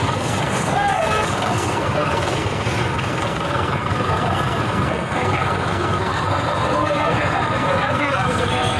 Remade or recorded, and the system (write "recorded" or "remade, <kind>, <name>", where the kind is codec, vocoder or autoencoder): remade, codec, SNAC